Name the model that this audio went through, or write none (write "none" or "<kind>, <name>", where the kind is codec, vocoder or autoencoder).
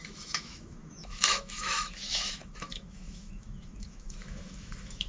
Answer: autoencoder, DAC-VAE